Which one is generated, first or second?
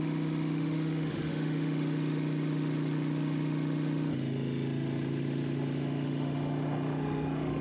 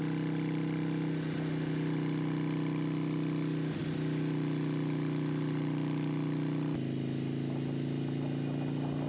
first